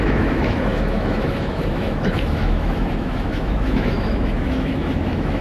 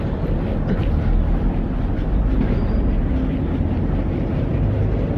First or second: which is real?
second